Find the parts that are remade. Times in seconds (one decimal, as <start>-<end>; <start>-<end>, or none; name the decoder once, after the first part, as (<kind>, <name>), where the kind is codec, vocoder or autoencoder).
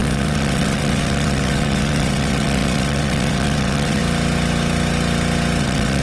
0.0-4.0 (vocoder, WaveNeXt); 5.6-6.0